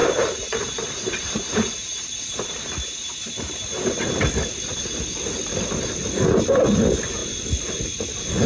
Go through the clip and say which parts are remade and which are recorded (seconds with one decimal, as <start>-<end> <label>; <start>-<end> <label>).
0.0-2.6 remade; 2.6-3.1 recorded; 3.1-4.0 remade; 4.0-8.5 recorded